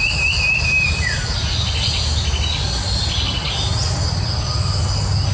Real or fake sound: real